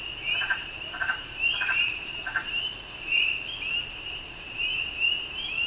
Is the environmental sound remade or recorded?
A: remade